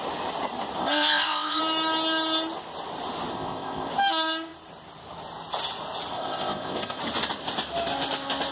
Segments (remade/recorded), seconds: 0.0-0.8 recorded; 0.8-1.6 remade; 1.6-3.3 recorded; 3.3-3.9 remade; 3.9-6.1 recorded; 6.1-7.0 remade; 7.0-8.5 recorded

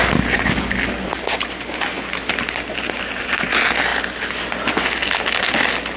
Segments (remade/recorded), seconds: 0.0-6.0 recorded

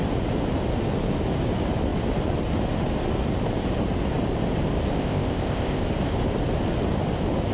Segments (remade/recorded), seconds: 0.0-5.0 recorded; 5.0-5.8 remade; 5.8-7.5 recorded

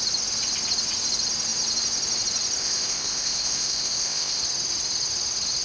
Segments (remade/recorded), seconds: 0.0-2.6 recorded; 2.6-4.4 remade; 4.4-5.6 recorded

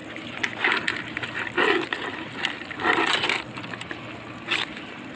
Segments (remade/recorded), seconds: 0.0-5.2 recorded